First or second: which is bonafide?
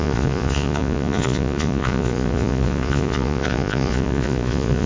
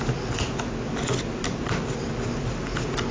second